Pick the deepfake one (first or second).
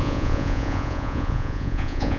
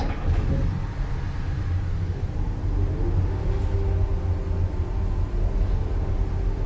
first